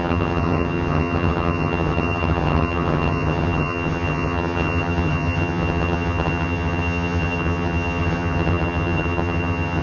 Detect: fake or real fake